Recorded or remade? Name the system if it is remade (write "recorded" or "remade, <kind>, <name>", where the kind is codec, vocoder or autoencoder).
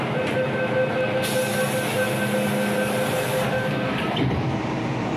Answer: recorded